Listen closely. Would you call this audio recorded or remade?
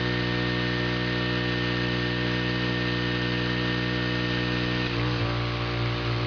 recorded